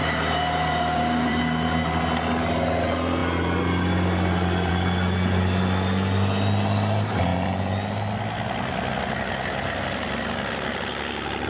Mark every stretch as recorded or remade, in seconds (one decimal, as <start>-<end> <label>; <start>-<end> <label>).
0.0-1.4 remade; 1.4-11.5 recorded